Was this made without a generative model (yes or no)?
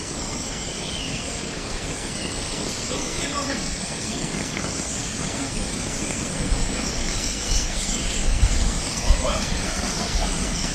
no